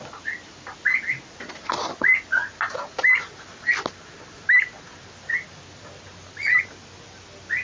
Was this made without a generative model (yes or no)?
yes